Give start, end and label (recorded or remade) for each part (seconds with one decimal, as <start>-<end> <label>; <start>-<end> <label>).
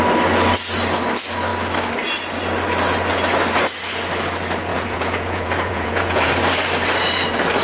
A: 0.0-4.7 recorded; 4.7-6.3 remade; 6.3-7.6 recorded